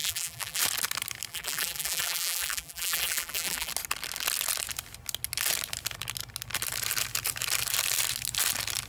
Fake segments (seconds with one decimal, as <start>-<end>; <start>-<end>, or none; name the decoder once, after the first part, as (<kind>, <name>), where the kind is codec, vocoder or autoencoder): 0.0-0.6 (vocoder, BigVGAN v2); 1.3-3.7